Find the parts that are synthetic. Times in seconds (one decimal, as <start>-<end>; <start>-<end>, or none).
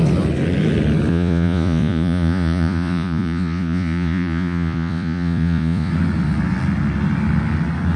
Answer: 1.1-5.9